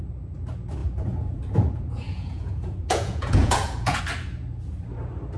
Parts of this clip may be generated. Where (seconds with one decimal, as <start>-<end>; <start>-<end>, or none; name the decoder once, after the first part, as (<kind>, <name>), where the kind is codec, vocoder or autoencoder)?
0.8-4.0 (vocoder, Vocos)